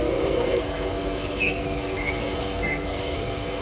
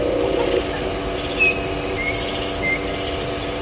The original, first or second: second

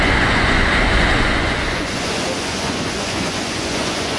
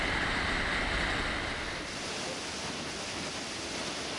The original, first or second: second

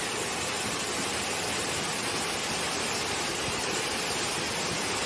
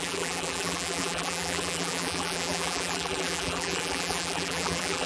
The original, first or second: first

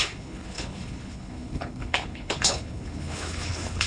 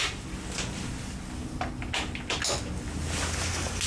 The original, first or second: second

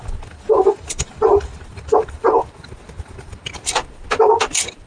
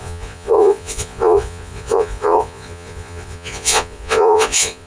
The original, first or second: first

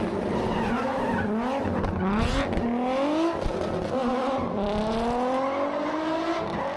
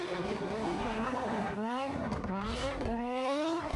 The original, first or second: first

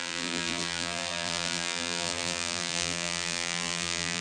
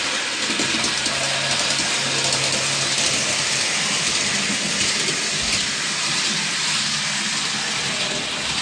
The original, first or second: second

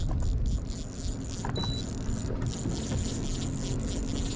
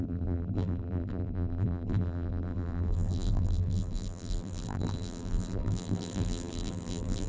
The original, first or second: first